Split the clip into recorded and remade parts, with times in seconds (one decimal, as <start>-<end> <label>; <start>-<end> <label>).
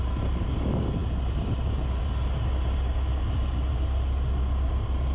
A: 0.0-5.1 recorded